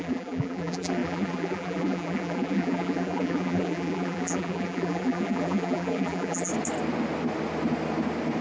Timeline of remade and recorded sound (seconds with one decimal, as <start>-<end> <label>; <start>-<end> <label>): 0.0-6.5 remade; 6.5-8.4 recorded